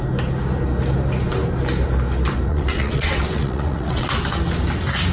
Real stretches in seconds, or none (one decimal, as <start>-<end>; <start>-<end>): 0.0-2.5; 4.1-5.1

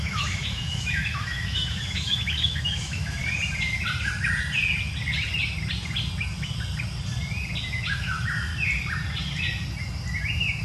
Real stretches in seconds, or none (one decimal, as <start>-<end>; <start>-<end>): 3.2-7.9; 8.5-10.6

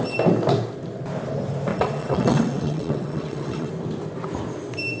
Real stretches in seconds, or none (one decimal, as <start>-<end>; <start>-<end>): 0.0-1.7; 3.7-5.0

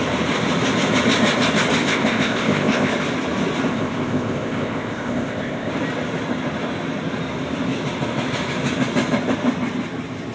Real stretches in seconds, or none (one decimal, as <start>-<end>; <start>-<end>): 0.0-1.8; 2.9-3.7; 5.7-10.3